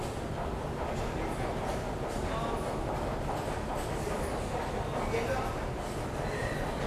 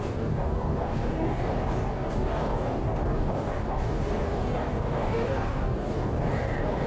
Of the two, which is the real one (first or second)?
first